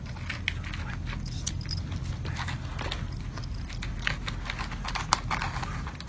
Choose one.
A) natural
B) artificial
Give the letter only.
A